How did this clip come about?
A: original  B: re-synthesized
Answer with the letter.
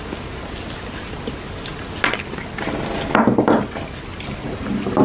A